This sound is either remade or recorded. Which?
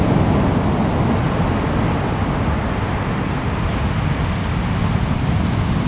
recorded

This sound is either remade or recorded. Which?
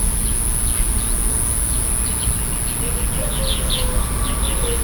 recorded